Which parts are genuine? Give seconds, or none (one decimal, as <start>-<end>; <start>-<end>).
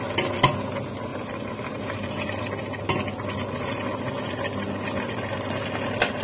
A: 0.0-1.1; 2.4-6.2